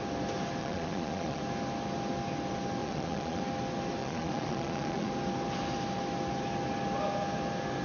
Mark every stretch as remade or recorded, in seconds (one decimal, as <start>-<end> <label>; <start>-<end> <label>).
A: 0.0-0.6 recorded; 0.6-1.4 remade; 1.4-2.8 recorded; 2.8-3.4 remade; 3.4-4.0 recorded; 4.0-5.1 remade; 5.1-7.8 recorded